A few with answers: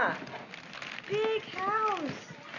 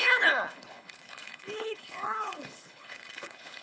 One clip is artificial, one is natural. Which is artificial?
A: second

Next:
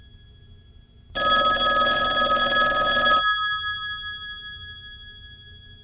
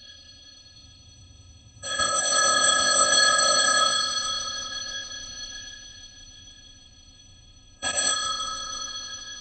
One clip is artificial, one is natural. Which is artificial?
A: second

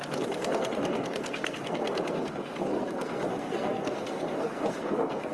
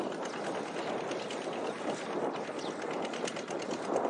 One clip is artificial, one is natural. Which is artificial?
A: first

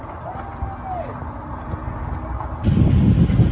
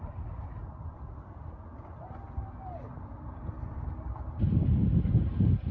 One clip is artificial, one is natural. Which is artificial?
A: second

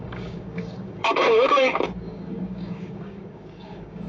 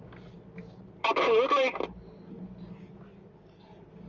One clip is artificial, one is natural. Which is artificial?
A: first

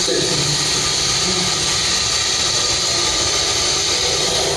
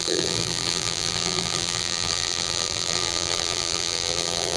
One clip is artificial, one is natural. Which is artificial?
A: second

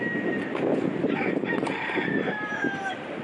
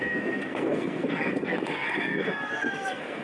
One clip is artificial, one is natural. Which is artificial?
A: second